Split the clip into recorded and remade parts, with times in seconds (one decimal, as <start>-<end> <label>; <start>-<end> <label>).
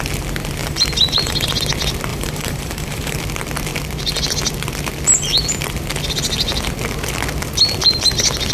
0.0-0.6 recorded; 0.6-1.6 remade; 1.6-2.1 recorded; 2.1-3.2 remade; 3.2-8.5 recorded